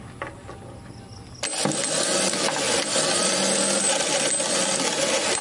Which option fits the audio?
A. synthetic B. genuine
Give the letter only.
B